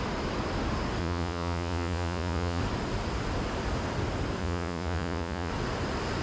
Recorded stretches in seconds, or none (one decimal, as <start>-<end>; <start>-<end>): 0.0-1.0; 2.6-4.4; 5.5-6.2